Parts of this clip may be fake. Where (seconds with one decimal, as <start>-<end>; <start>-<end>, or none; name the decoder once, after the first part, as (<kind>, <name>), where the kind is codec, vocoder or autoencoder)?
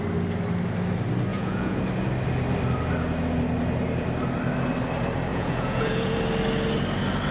1.3-1.8 (vocoder, Vocos); 5.3-6.2